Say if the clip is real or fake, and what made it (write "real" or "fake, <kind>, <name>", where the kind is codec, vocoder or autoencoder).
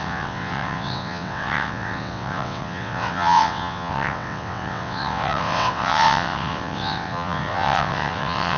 fake, vocoder, WaveNeXt